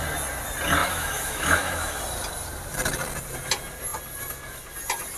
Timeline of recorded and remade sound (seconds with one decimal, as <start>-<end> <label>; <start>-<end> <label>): 0.0-0.8 recorded; 0.8-2.0 remade; 2.0-5.2 recorded